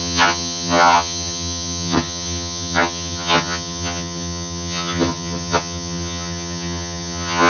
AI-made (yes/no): yes